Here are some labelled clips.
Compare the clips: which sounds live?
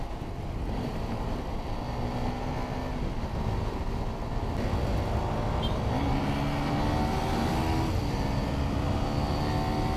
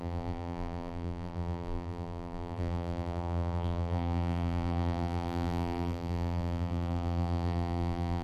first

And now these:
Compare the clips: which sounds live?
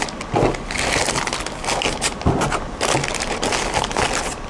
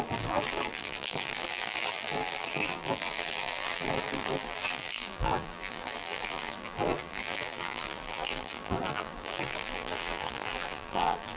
first